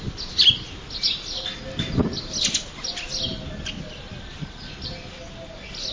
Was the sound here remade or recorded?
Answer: recorded